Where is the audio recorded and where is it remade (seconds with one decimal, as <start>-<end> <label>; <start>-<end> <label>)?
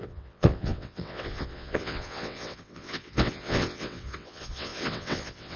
0.0-5.6 remade